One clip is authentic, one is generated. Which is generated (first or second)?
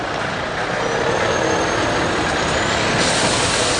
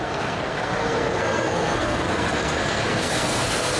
second